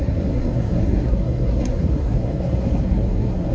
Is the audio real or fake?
fake